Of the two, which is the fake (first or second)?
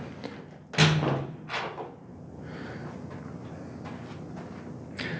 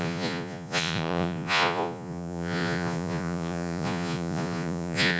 second